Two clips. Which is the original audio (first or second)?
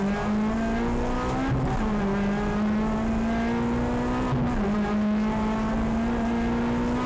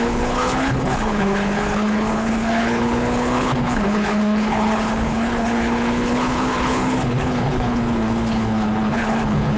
first